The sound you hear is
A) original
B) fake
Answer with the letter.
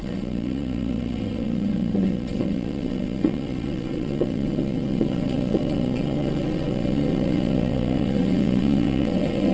B